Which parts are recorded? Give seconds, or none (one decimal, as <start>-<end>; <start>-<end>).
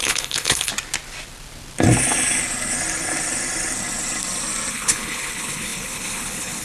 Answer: 0.7-4.7